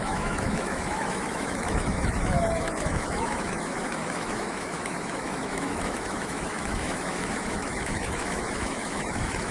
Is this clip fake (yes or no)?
yes